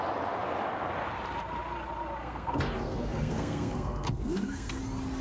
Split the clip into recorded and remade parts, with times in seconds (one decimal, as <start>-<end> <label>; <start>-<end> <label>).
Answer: 0.0-2.2 recorded; 2.2-4.8 remade; 4.8-5.2 recorded